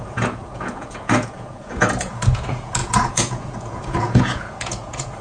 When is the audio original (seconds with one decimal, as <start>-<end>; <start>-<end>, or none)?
none